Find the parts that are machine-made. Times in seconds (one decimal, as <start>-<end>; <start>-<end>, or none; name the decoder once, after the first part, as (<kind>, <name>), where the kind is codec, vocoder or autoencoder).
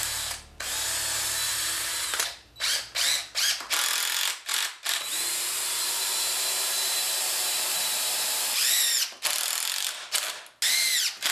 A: 4.5-8.6 (vocoder, BigVGAN v2)